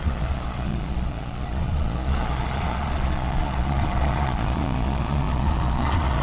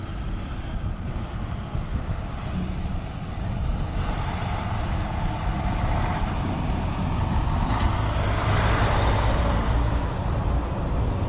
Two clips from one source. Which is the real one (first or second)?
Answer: second